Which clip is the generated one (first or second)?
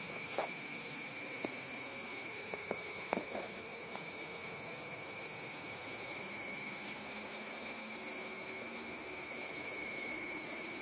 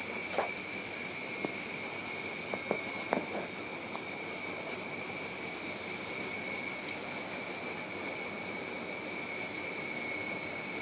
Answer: first